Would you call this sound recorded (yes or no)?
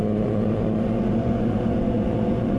no